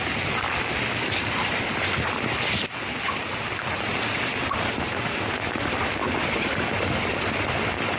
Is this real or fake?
real